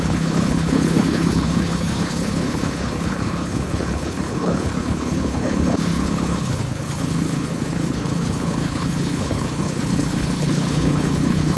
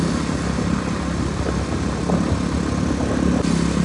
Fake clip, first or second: first